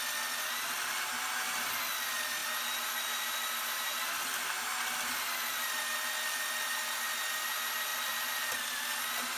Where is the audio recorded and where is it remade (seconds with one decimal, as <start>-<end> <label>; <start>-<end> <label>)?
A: 0.0-7.9 recorded; 7.9-9.0 remade; 9.0-9.4 recorded